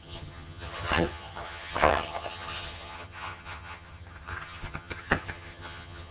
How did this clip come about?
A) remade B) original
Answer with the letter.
A